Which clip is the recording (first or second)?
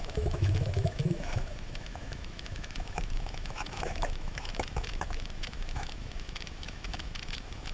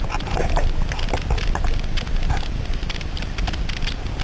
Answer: second